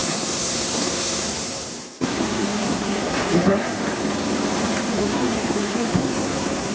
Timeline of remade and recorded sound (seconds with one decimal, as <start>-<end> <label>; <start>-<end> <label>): 0.0-3.8 remade; 3.8-4.9 recorded; 4.9-6.7 remade

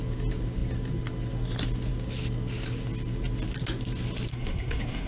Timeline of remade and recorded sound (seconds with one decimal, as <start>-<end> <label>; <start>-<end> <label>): 0.0-4.3 recorded; 4.3-5.1 remade

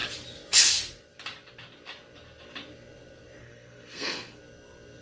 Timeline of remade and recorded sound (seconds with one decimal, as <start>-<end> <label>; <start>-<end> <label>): 0.0-3.4 recorded; 3.4-4.4 remade; 4.4-5.0 recorded

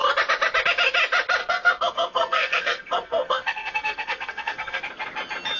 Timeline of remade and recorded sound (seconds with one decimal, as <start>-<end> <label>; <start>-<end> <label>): 0.0-1.4 recorded; 1.4-4.8 remade; 4.8-5.6 recorded